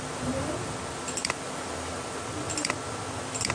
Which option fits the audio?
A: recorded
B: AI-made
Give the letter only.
A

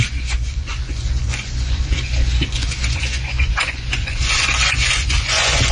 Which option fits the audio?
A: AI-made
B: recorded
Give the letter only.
A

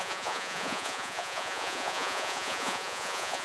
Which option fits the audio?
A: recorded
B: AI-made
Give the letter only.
B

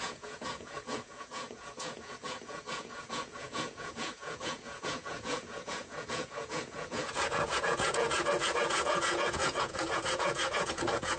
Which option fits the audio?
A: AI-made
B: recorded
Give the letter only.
A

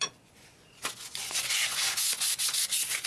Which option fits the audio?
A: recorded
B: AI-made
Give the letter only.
B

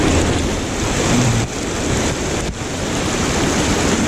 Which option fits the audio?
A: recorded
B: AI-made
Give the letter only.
A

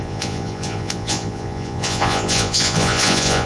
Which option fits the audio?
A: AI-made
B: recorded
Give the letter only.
A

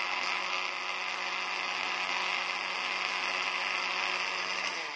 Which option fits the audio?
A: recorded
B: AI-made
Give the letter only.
A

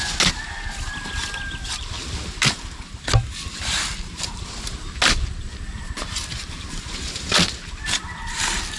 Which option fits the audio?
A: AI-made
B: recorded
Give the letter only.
B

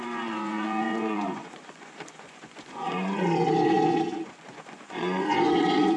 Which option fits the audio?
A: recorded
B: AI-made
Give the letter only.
B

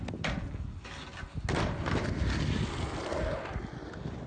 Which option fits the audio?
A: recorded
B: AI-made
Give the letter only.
A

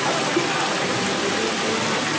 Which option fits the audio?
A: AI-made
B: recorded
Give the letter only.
B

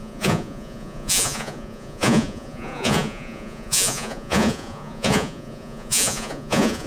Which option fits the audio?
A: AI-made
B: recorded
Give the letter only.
A